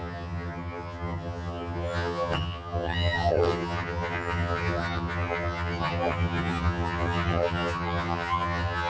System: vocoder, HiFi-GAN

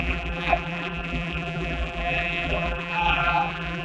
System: vocoder, BigVGAN v2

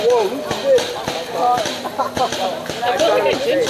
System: none